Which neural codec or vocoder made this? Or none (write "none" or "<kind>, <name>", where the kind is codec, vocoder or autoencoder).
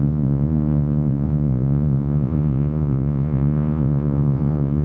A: vocoder, Vocos